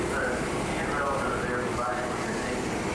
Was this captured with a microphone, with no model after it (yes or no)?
no